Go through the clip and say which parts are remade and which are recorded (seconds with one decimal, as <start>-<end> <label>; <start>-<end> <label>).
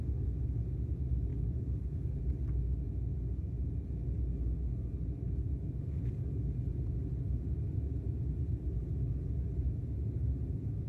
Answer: 0.0-1.3 recorded; 1.3-2.2 remade; 2.2-10.9 recorded